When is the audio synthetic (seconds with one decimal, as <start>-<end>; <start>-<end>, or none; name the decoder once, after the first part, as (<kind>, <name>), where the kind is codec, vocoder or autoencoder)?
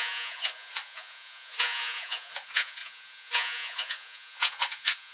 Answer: 0.0-5.1 (vocoder, Vocos)